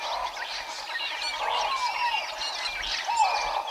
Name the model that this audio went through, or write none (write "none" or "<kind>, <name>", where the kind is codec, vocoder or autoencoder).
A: none